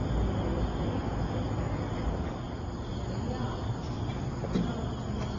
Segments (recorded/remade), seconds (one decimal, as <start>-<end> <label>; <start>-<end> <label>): 0.0-5.4 recorded